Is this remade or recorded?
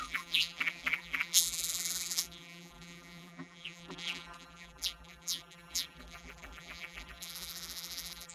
remade